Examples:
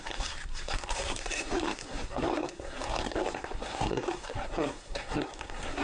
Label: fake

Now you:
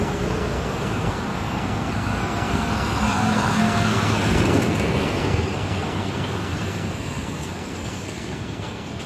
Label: fake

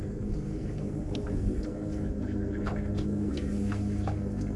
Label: fake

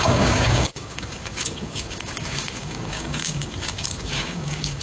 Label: fake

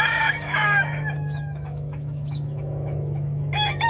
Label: fake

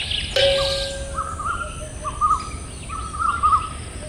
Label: real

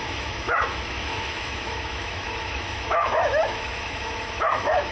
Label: fake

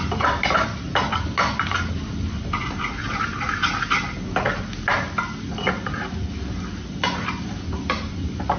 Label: real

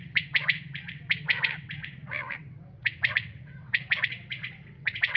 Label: fake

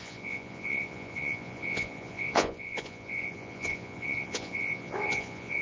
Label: fake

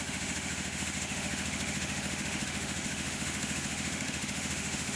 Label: fake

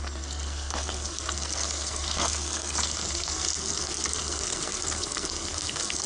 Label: fake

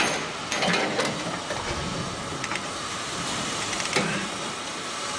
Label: fake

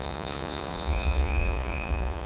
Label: fake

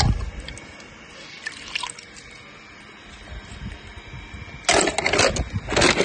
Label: real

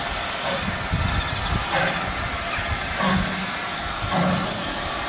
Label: real